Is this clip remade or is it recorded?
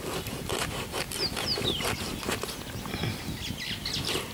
recorded